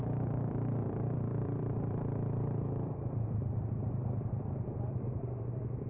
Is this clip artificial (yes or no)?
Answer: yes